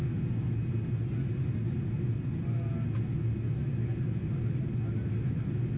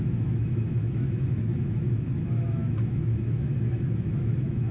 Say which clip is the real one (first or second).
first